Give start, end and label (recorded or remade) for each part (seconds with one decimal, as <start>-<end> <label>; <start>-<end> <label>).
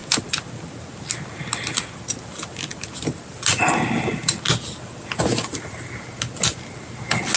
0.0-7.4 recorded